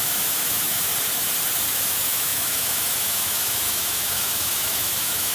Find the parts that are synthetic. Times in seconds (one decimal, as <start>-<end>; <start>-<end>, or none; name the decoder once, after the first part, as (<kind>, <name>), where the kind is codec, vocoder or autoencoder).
0.0-0.9 (autoencoder, DAC-VAE); 1.7-5.3